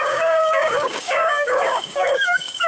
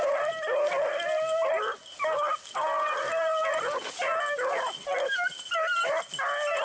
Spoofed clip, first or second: first